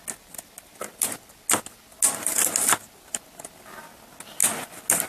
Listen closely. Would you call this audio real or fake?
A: real